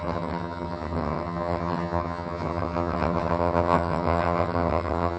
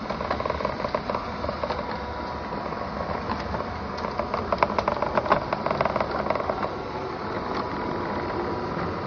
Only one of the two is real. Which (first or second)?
second